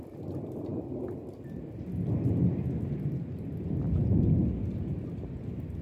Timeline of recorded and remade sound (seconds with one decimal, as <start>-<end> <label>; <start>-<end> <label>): 0.0-5.8 recorded